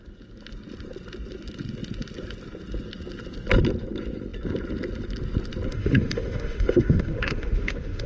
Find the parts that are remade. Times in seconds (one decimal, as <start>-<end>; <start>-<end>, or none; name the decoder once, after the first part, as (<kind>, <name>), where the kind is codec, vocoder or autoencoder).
5.7-8.1 (autoencoder, DAC-VAE)